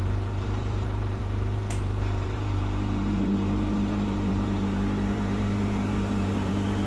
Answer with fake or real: fake